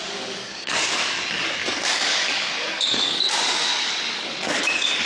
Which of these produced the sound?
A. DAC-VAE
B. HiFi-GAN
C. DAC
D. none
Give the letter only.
C